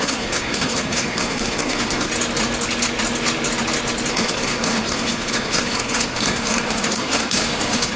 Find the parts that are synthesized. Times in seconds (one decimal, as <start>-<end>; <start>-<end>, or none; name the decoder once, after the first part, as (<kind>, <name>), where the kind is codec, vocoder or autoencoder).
0.0-2.1 (codec, SNAC); 4.1-8.0